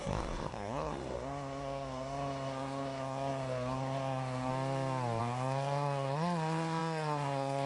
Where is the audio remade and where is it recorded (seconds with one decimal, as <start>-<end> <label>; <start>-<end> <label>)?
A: 0.0-4.5 remade; 4.5-5.2 recorded; 5.2-7.7 remade